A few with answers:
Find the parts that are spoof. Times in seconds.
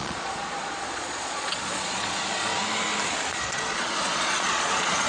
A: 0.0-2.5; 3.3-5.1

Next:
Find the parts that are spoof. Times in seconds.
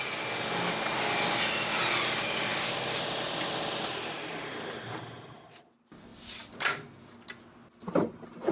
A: none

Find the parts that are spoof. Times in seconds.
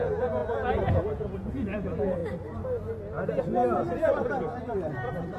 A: 0.0-2.2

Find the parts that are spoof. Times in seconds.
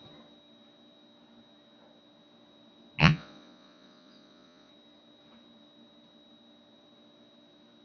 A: 3.0-4.7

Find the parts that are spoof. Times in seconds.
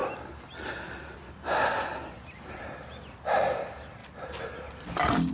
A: none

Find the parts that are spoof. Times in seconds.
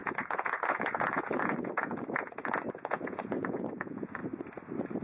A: 0.0-4.2